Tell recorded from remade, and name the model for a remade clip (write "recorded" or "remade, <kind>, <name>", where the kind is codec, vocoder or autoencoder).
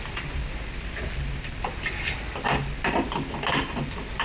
remade, vocoder, BigVGAN v2